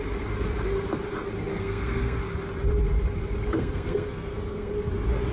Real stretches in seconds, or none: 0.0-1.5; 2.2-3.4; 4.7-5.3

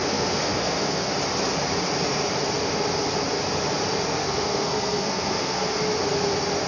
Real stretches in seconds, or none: 1.1-4.2; 5.8-6.7

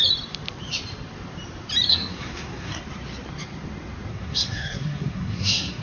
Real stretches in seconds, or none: 0.0-1.9; 2.8-4.1

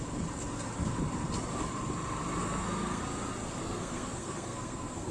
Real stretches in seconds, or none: 0.0-2.4; 3.0-3.6